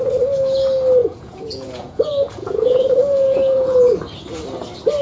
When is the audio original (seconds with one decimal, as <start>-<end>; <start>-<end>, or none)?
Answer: 0.0-1.0; 4.0-5.0